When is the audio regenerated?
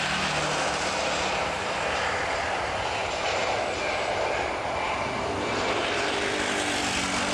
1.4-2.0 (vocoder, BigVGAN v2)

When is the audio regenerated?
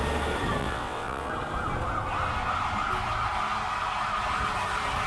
0.6-1.3 (vocoder, WaveNeXt)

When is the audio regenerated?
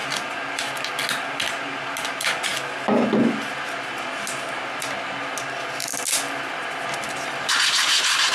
none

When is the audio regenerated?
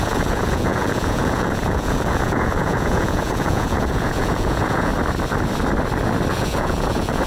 0.0-4.9 (vocoder, Vocos); 6.3-7.3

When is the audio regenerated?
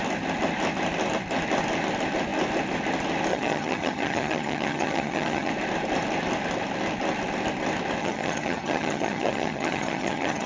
3.3-5.5 (vocoder, HiFi-GAN); 8.0-10.5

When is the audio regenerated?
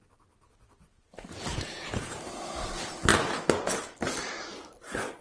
1.5-2.2 (vocoder, Vocos)